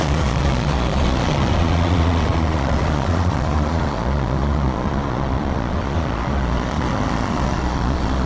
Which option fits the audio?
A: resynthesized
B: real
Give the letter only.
A